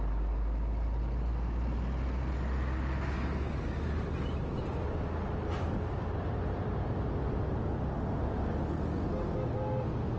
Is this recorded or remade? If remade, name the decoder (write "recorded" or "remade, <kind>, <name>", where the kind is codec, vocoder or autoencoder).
recorded